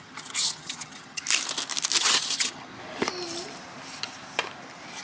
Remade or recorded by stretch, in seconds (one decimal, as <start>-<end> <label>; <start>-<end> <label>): 0.0-1.2 remade; 1.2-2.0 recorded; 2.0-2.7 remade; 2.7-5.0 recorded